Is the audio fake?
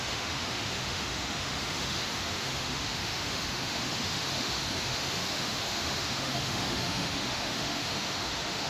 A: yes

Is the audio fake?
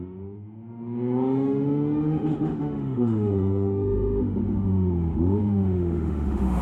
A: yes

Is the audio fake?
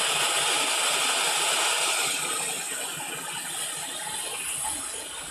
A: no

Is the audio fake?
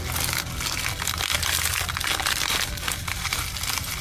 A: no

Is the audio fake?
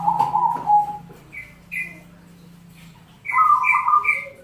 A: no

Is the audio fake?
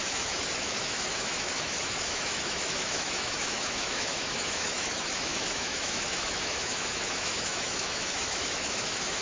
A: yes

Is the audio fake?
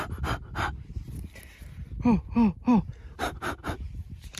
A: no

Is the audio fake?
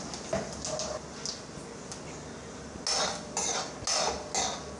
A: no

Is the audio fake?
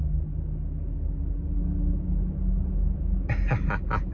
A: no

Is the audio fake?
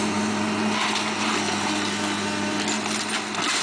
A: no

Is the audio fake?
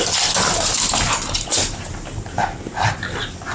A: no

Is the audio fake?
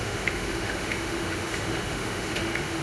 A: yes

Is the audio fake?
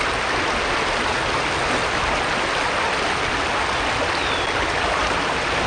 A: no